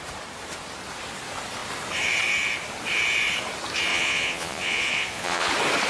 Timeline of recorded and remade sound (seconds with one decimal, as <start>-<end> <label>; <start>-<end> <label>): 0.0-3.9 recorded; 3.9-5.5 remade; 5.5-5.9 recorded